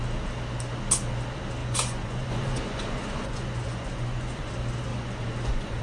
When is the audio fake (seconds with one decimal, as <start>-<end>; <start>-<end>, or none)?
1.6-4.5; 4.9-5.8